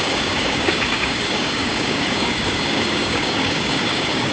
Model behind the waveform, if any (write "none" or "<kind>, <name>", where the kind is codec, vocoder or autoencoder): codec, DAC